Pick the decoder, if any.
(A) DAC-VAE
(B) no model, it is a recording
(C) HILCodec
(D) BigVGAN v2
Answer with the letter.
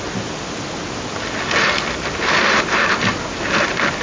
B